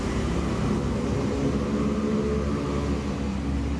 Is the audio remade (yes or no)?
no